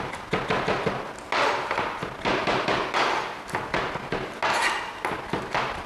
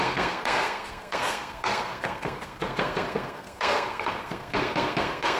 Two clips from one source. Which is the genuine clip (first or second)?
first